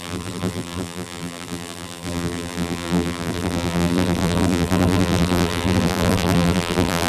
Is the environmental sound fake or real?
fake